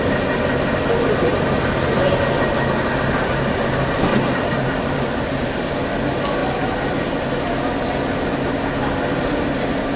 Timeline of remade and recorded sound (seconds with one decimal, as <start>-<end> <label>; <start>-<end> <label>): 0.0-1.3 recorded; 1.3-2.2 remade; 2.2-4.1 recorded; 4.1-5.7 remade; 5.7-10.0 recorded